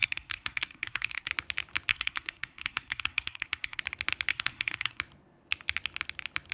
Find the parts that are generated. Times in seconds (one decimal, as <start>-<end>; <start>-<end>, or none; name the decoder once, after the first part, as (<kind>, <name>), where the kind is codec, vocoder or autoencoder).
0.0-1.3 (codec, SNAC); 1.9-3.8; 4.3-5.0